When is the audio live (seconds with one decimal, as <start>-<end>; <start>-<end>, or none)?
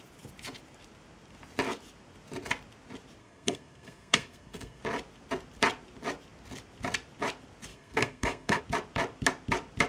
0.0-3.2; 4.8-7.7; 8.6-9.9